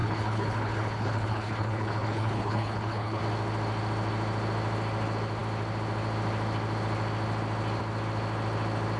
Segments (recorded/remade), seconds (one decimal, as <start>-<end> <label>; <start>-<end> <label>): 0.0-3.2 remade; 3.2-9.0 recorded